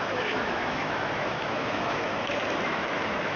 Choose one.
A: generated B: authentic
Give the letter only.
A